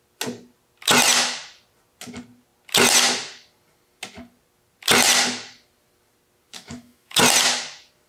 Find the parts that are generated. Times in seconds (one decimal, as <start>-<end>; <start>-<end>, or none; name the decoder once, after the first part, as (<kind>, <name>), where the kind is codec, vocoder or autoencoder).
6.5-7.2 (autoencoder, DAC-VAE)